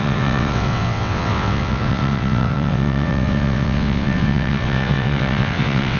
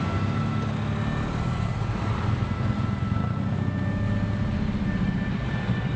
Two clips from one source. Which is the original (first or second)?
second